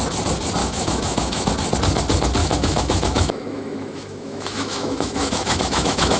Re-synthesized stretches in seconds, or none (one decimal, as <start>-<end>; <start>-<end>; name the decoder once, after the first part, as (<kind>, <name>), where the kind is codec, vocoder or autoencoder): 0.6-1.5 (autoencoder, DAC-VAE); 2.4-6.2

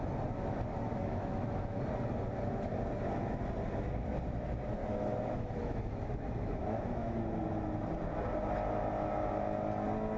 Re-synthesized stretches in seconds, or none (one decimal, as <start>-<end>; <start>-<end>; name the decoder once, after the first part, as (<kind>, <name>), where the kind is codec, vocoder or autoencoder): 0.9-1.8 (autoencoder, DAC-VAE); 4.8-7.2

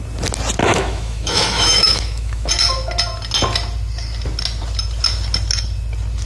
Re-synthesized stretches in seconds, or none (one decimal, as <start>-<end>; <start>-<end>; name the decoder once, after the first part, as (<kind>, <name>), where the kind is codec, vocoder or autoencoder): 0.6-2.5 (autoencoder, DAC-VAE)

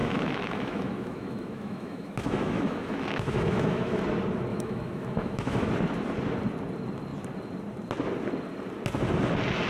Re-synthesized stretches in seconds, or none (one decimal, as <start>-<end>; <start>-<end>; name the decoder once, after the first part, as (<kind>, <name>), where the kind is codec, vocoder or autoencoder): 0.0-4.0 (autoencoder, DAC-VAE); 4.5-5.7

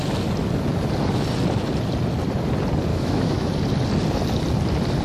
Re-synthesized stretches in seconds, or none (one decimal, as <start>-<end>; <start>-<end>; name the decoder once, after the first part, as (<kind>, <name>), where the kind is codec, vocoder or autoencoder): 2.9-3.5 (autoencoder, DAC-VAE)